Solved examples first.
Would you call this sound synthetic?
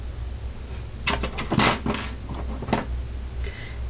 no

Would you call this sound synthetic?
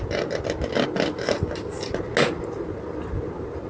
no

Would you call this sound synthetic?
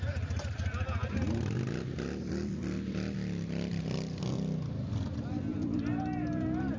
no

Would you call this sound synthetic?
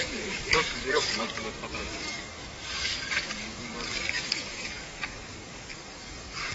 yes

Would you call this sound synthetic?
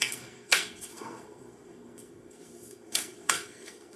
yes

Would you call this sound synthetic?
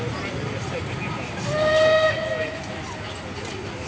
no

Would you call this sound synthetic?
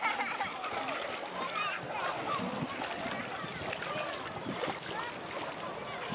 no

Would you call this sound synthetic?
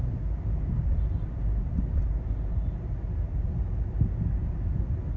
no